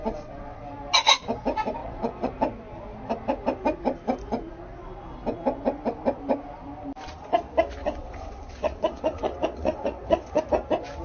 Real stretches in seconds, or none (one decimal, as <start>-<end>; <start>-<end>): 0.6-1.8; 2.3-7.8; 10.4-11.0